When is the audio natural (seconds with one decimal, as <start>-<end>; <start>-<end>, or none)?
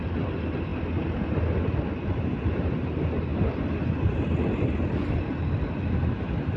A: 0.0-6.6